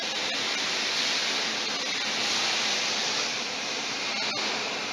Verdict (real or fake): real